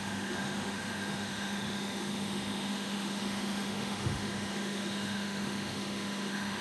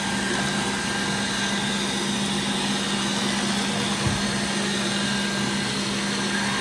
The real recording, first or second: second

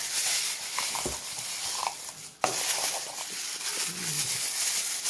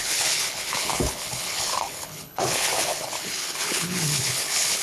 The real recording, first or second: first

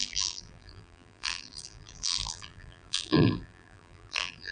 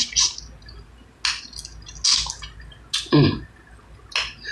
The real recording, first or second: second